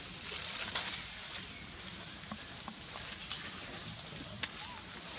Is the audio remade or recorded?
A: recorded